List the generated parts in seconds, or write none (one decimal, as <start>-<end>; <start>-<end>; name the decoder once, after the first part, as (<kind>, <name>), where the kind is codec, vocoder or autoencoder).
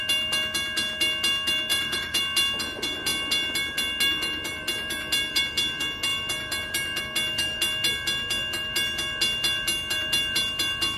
1.7-2.2 (vocoder, Vocos)